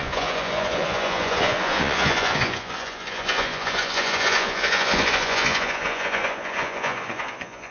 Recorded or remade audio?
remade